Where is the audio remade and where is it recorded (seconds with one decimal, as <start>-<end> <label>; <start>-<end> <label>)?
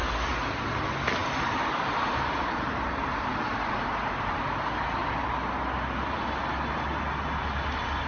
0.0-0.7 remade; 0.7-1.2 recorded; 1.2-4.6 remade; 4.6-8.1 recorded